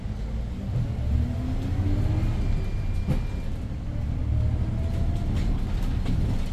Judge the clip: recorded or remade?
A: recorded